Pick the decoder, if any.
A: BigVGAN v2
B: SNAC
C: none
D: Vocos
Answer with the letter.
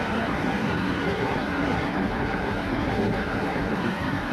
B